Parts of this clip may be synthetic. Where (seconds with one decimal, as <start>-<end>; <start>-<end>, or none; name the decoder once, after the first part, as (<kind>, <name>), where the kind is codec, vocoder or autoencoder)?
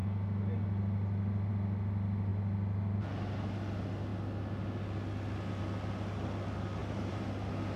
6.8-7.3 (vocoder, BigVGAN v2)